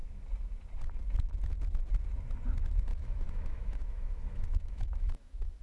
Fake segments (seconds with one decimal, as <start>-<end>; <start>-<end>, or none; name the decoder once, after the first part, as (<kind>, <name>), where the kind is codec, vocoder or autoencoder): 2.9-5.6 (autoencoder, DAC-VAE)